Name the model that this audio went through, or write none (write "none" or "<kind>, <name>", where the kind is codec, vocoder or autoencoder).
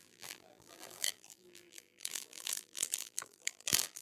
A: vocoder, BigVGAN v2